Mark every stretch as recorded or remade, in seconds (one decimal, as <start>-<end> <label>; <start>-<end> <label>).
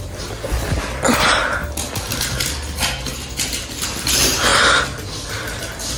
0.0-6.0 recorded